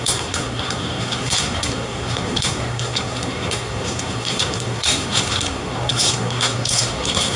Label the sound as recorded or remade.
remade